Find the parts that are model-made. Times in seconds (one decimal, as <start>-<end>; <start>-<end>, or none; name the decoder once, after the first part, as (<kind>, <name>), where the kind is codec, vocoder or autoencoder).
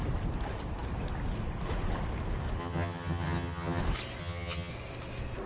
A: 2.6-3.8 (vocoder, HiFi-GAN); 4.2-4.7